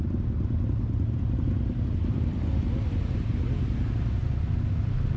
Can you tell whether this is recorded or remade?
recorded